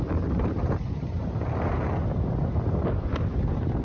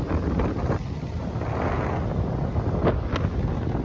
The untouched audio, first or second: second